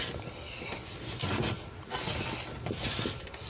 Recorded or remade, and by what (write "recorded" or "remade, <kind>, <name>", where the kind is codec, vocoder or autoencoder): recorded